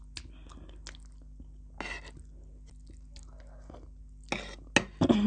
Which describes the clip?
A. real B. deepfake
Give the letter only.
A